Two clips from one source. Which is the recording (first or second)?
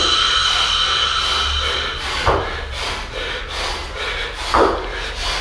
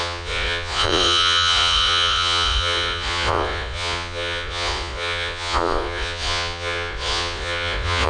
first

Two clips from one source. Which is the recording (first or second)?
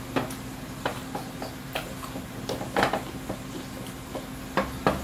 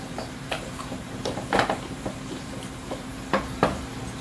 first